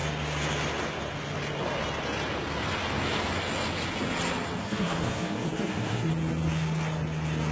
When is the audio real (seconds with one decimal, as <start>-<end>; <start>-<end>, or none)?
0.0-4.6; 6.1-7.5